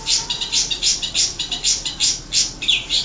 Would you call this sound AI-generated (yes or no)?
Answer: yes